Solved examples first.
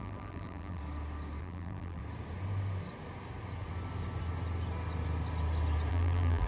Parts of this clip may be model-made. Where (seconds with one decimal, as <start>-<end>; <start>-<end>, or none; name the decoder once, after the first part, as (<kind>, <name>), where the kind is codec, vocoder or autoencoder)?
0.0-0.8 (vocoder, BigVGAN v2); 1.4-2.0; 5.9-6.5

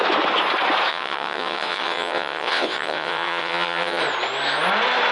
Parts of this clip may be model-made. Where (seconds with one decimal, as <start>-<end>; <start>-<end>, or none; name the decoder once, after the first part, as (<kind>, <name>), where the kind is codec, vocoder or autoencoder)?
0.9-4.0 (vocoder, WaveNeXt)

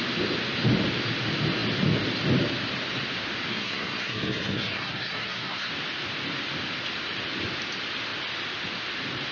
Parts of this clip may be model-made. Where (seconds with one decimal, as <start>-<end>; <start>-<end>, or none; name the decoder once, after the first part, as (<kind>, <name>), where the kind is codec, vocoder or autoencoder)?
3.5-5.7 (codec, SNAC)

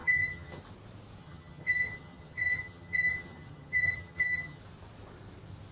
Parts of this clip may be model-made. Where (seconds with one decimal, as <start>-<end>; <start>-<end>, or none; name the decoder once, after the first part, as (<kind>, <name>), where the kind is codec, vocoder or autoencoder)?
0.0-0.6 (vocoder, HiFi-GAN); 1.2-4.6